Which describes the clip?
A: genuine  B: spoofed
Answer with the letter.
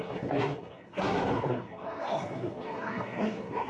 B